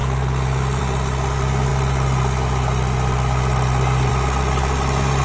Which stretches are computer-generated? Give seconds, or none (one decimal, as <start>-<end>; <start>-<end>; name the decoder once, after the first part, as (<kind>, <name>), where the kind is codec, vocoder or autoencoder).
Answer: none

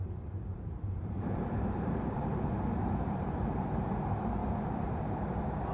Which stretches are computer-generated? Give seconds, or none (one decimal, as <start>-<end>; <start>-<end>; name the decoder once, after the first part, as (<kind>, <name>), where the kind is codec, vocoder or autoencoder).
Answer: 0.5-3.9 (vocoder, BigVGAN v2); 4.4-5.3

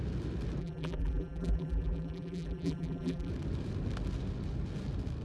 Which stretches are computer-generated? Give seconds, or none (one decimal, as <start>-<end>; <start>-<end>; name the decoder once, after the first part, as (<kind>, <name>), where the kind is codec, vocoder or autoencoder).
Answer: 0.6-3.3 (vocoder, BigVGAN v2)

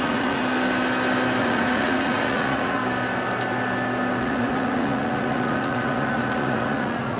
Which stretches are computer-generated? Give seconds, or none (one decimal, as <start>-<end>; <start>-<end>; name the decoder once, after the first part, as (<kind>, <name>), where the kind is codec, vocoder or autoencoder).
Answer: 0.0-0.4 (vocoder, Vocos); 1.4-2.8; 4.2-7.2

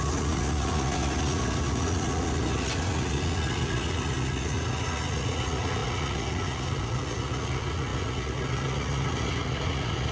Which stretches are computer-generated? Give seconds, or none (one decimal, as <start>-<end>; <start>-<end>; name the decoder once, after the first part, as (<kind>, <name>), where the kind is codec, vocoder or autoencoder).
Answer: 0.0-10.1 (vocoder, Vocos)

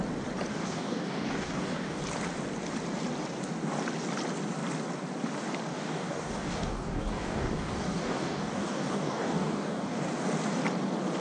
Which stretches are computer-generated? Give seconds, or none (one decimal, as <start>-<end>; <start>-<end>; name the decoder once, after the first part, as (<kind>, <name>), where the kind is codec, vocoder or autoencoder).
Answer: 0.5-2.0 (codec, DAC); 5.7-10.1

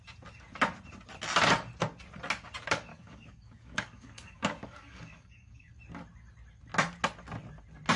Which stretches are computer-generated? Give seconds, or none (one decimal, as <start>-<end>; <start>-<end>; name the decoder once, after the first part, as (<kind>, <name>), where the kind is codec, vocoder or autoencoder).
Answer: 2.9-5.7 (codec, DAC)

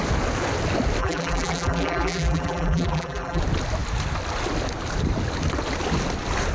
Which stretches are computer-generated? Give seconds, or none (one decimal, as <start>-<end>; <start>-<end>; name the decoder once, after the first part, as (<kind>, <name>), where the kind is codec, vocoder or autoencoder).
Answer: 1.0-3.4 (vocoder, BigVGAN v2)